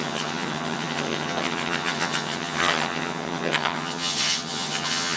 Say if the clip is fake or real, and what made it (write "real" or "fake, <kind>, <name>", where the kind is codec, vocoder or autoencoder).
fake, vocoder, HiFi-GAN